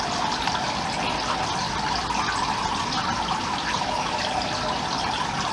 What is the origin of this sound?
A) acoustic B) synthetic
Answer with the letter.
A